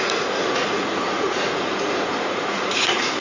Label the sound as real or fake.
fake